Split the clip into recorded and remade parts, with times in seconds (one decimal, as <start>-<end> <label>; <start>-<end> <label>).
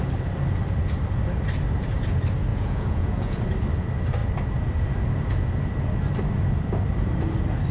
0.0-2.5 recorded; 2.5-3.4 remade; 3.4-7.7 recorded